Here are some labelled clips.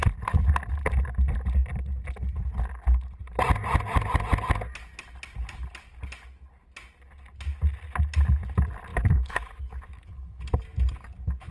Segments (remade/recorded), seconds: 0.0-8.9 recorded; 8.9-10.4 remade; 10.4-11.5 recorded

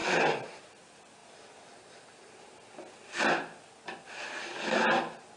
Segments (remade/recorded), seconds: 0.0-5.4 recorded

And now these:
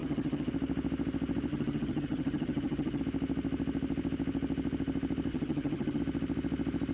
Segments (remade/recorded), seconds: 0.0-0.5 remade; 0.5-1.5 recorded; 1.5-3.0 remade; 3.0-5.3 recorded; 5.3-6.0 remade; 6.0-6.9 recorded

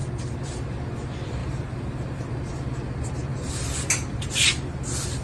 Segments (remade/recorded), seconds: 0.0-5.2 recorded